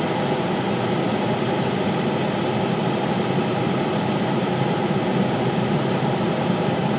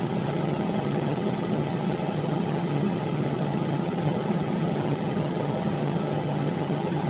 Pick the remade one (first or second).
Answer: second